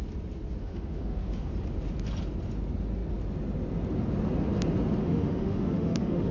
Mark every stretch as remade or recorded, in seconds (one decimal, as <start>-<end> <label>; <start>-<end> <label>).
0.0-0.6 recorded; 0.6-1.5 remade; 1.5-5.0 recorded; 5.0-6.3 remade